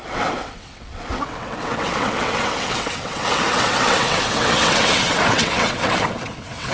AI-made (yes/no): yes